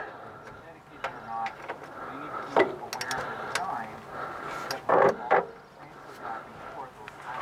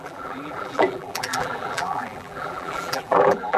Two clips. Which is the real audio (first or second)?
first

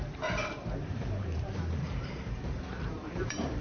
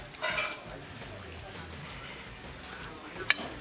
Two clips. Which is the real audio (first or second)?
second